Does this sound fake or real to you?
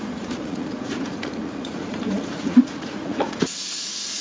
fake